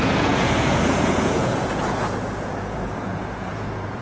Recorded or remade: remade